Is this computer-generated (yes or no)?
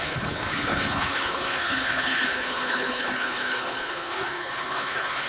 yes